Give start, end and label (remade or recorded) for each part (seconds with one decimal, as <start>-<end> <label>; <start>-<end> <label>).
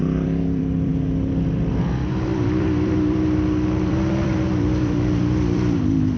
0.0-0.9 remade; 0.9-1.8 recorded; 1.8-6.2 remade